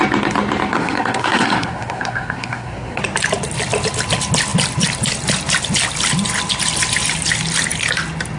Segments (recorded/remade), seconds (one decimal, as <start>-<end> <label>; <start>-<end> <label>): 0.0-0.7 recorded; 0.7-3.0 remade; 3.0-8.4 recorded